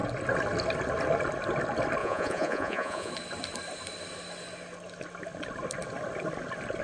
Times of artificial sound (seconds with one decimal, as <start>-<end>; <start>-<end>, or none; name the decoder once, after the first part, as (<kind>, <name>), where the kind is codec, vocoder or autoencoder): 2.0-3.1 (vocoder, Vocos)